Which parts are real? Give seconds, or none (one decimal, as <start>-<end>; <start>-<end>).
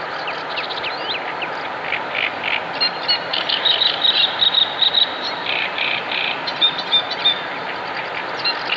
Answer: 0.0-3.3; 7.5-8.8